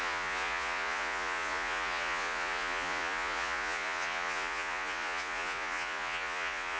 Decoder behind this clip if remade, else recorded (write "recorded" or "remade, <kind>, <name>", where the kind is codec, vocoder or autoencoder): remade, vocoder, Vocos